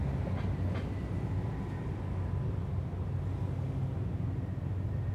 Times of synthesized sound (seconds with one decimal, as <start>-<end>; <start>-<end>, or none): none